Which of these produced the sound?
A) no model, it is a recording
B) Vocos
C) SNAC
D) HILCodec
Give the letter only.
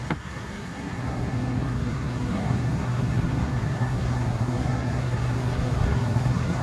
C